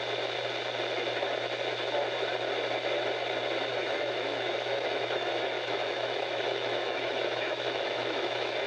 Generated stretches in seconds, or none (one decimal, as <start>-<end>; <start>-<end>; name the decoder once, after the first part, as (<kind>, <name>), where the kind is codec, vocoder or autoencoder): 3.7-8.7 (autoencoder, DAC-VAE)

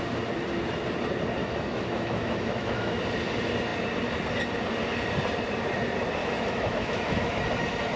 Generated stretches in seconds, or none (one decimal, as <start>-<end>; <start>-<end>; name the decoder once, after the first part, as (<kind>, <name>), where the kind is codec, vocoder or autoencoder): 1.4-3.0 (autoencoder, DAC-VAE); 6.2-7.4

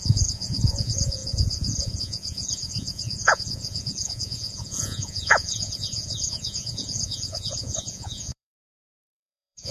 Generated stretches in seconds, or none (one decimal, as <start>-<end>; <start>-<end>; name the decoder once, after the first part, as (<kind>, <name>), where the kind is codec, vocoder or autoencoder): 0.0-9.7 (vocoder, Vocos)

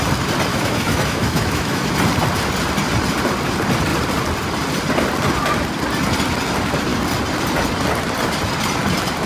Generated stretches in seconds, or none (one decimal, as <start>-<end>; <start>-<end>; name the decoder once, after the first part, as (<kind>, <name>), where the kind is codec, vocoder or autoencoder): 0.5-1.9 (autoencoder, DAC-VAE)

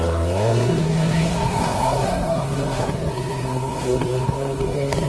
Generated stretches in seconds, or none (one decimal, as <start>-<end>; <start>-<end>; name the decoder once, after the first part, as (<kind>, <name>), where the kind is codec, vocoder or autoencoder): 0.0-5.1 (codec, SNAC)

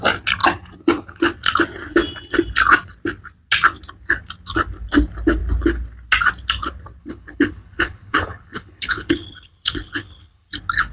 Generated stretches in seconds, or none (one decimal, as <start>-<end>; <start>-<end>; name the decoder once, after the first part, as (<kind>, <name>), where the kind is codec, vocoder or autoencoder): 7.0-10.5 (codec, HILCodec)